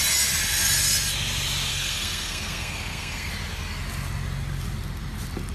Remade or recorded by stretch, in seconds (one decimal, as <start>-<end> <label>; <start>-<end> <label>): 0.0-1.7 recorded; 1.7-3.3 remade; 3.3-5.5 recorded